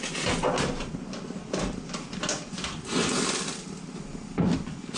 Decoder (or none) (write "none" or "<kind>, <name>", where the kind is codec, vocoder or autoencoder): none